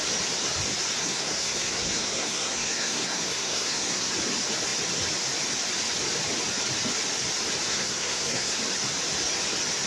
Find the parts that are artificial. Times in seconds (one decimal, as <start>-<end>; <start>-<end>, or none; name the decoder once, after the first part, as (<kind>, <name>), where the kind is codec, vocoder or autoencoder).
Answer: 1.0-4.1 (codec, SNAC); 7.7-8.6